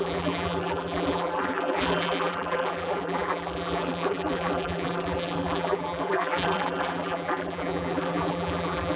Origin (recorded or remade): remade